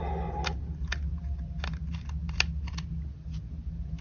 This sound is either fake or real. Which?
real